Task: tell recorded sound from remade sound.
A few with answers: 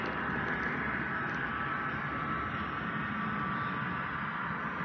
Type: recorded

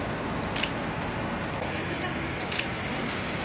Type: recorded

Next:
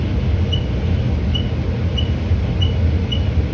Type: recorded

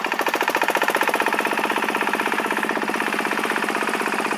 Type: remade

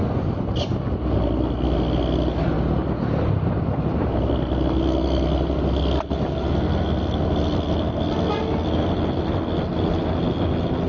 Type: recorded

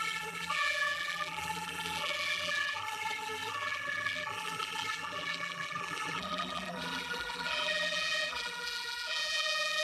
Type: remade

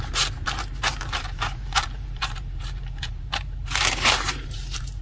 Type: remade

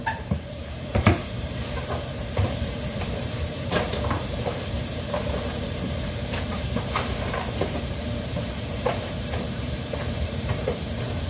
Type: remade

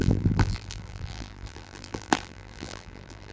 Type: remade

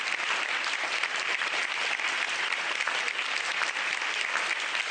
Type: remade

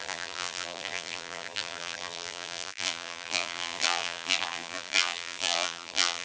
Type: remade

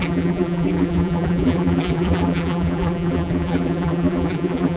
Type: remade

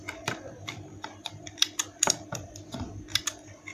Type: remade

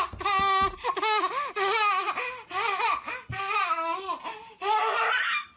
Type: recorded